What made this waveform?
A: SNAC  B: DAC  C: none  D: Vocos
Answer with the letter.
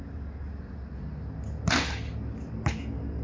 C